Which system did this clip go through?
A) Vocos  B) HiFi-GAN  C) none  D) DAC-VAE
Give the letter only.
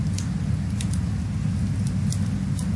C